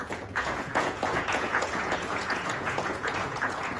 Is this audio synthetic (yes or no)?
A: yes